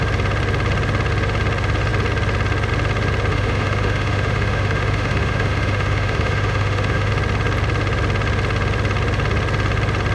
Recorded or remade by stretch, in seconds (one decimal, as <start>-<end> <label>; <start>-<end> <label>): 0.0-3.3 recorded; 3.3-7.1 remade; 7.1-10.1 recorded